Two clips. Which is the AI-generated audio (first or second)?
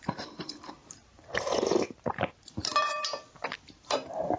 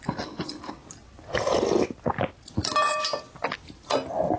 first